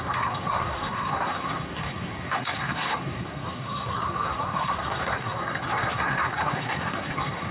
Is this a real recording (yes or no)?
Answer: no